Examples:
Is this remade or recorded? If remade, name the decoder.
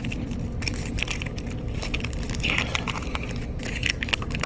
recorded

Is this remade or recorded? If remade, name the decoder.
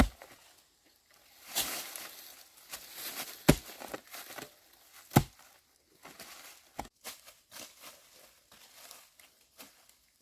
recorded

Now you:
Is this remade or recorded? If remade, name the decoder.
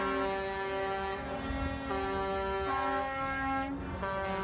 recorded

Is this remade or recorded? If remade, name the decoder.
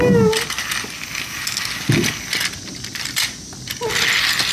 recorded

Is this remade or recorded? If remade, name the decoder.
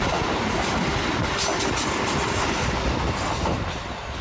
recorded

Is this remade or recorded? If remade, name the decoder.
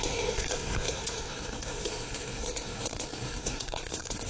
remade, codec, SNAC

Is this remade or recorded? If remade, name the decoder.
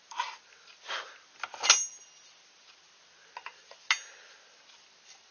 recorded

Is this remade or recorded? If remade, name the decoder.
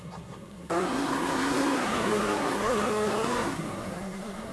remade, codec, SNAC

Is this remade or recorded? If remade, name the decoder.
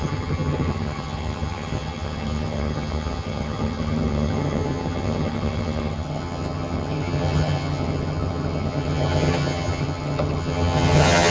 remade, vocoder, HiFi-GAN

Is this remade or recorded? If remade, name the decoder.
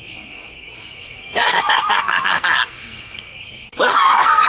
remade, codec, SNAC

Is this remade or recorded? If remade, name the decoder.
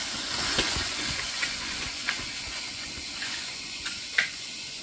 remade, vocoder, Vocos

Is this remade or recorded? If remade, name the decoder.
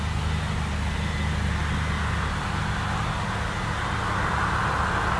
recorded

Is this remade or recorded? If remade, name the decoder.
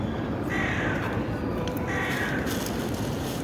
recorded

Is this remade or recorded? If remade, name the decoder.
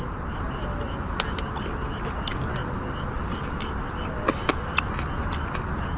recorded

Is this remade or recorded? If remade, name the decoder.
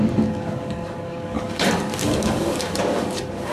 remade, codec, DAC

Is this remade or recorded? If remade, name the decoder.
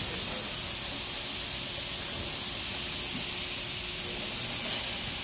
recorded